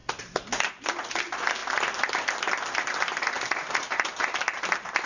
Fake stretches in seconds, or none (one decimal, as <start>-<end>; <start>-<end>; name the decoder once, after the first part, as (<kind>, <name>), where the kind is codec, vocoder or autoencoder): 0.0-0.7 (vocoder, BigVGAN v2); 1.6-5.1

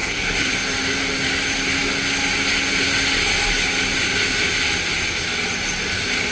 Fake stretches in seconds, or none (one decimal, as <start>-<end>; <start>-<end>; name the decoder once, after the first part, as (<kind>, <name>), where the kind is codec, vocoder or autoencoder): 0.0-0.5 (codec, SNAC)